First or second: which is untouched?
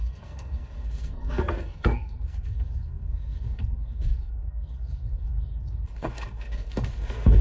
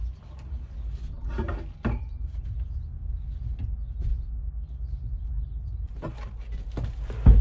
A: second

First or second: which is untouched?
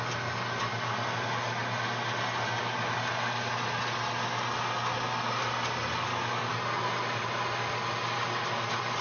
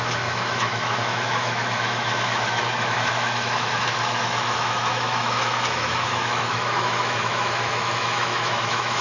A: first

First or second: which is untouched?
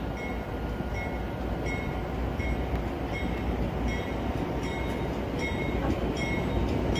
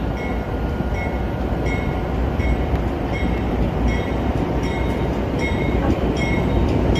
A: first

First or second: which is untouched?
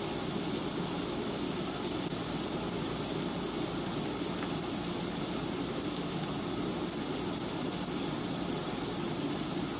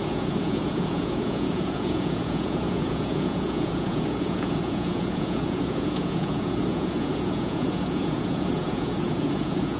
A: first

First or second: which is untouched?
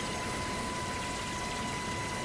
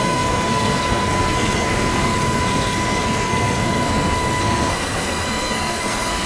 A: first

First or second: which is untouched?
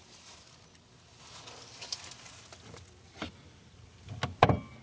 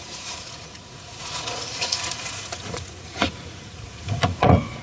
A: first